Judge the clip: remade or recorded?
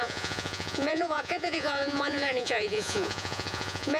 remade